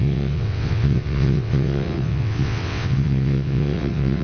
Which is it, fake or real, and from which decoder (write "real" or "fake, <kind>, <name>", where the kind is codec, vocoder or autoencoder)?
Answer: fake, vocoder, WaveNeXt